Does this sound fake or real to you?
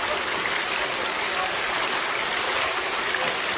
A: real